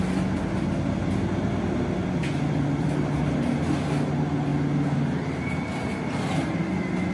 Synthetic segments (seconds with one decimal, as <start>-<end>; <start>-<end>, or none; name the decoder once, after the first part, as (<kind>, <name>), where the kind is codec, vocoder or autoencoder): none